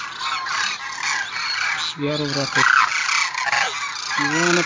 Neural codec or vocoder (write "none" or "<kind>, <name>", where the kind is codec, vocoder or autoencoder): none